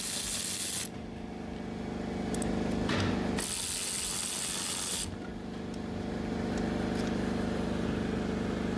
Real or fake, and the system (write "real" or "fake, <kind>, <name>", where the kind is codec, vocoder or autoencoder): real